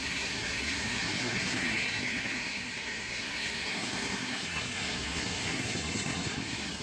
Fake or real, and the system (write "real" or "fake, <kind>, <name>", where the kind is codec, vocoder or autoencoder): fake, codec, SNAC